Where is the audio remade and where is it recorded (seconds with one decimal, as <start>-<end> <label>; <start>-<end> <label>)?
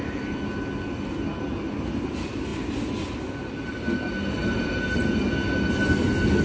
0.0-6.4 recorded